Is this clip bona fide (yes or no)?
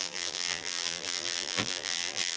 no